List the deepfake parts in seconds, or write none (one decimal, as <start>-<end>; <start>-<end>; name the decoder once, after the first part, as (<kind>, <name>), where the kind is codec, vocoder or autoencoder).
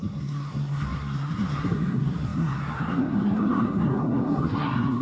0.0-5.0 (codec, SNAC)